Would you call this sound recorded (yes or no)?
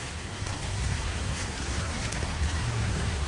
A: no